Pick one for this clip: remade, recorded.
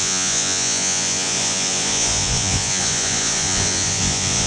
remade